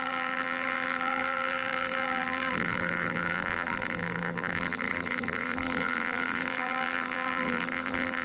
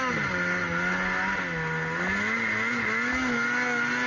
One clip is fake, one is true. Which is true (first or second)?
second